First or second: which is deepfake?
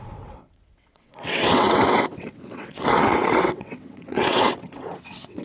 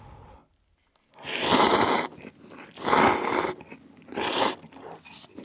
first